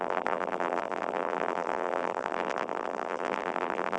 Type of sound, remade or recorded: remade